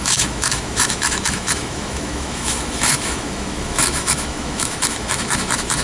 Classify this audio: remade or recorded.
remade